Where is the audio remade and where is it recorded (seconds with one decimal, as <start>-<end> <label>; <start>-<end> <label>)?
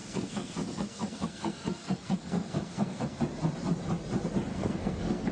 0.0-3.2 remade; 3.2-4.5 recorded; 4.5-5.3 remade